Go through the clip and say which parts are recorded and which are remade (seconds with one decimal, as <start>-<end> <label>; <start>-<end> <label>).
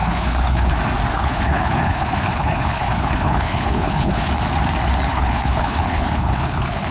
0.0-0.7 remade; 0.7-1.1 recorded; 1.1-4.3 remade; 4.3-5.1 recorded; 5.1-6.9 remade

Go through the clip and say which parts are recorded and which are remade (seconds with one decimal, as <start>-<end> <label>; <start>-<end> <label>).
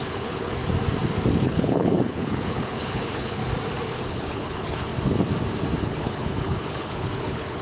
0.0-0.6 remade; 0.6-1.4 recorded; 1.4-3.4 remade; 3.4-3.9 recorded; 3.9-4.9 remade; 4.9-5.8 recorded; 5.8-7.6 remade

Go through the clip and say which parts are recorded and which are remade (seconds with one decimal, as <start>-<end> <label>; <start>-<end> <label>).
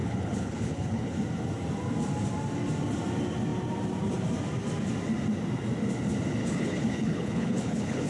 0.0-1.2 remade; 1.2-6.4 recorded; 6.4-8.1 remade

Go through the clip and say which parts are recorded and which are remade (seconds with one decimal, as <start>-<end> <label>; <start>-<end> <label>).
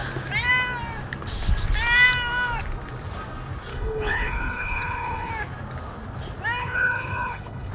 0.0-3.7 recorded; 3.7-5.3 remade; 5.3-6.6 recorded; 6.6-7.7 remade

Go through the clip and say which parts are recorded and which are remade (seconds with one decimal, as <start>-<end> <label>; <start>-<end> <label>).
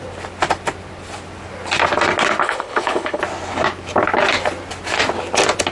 0.0-2.4 recorded; 2.4-3.2 remade; 3.2-5.7 recorded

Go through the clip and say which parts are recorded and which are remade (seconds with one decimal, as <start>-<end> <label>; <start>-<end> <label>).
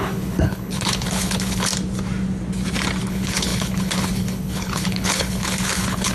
0.0-1.7 remade; 1.7-3.1 recorded; 3.1-6.1 remade